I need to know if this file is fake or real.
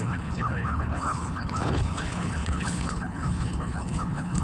fake